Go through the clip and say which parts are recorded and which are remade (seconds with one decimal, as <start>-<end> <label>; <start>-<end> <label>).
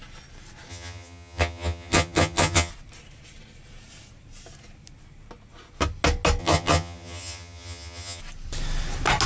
0.0-0.7 recorded; 0.7-2.7 remade; 2.7-6.4 recorded; 6.4-8.2 remade; 8.2-9.3 recorded